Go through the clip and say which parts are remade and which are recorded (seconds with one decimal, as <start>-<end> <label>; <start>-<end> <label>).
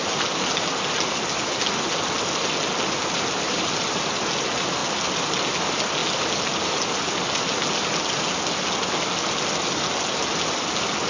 0.0-11.1 recorded